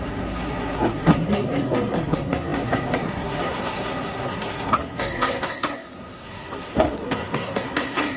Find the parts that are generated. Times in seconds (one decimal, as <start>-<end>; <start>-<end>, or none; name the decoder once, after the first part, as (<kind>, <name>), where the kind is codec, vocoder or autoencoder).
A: 0.0-8.2 (codec, SNAC)